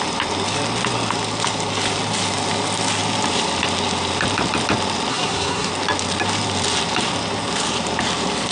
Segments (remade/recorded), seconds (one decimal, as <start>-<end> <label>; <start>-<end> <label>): 0.0-5.1 recorded; 5.1-5.7 remade; 5.7-8.5 recorded